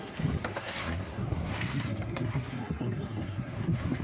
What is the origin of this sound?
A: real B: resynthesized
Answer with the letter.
B